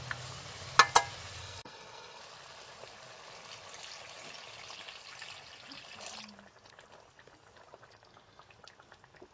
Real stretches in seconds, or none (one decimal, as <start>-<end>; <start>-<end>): 0.0-1.4; 2.2-9.3